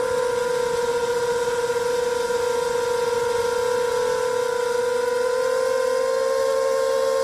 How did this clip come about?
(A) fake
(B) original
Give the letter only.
B